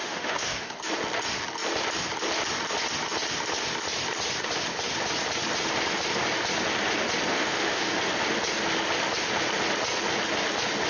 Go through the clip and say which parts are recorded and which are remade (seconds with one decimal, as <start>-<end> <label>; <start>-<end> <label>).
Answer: 0.0-0.7 remade; 0.7-7.3 recorded; 7.3-7.9 remade; 7.9-10.9 recorded